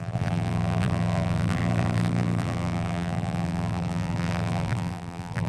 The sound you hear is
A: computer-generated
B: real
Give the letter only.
A